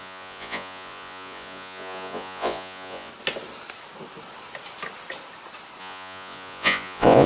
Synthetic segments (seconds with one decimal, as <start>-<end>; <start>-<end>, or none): 0.0-3.1; 5.8-7.3